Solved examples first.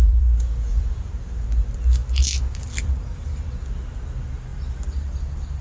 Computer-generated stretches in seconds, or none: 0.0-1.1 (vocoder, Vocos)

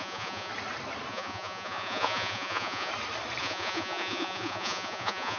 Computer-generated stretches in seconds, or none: 0.0-0.5 (vocoder, Vocos); 1.1-2.9; 3.4-5.4

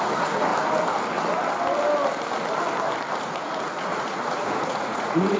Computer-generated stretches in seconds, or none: 0.0-0.5 (vocoder, Vocos); 3.2-5.4